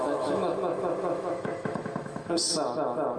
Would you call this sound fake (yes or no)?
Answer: yes